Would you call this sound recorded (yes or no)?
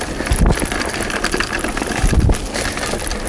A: yes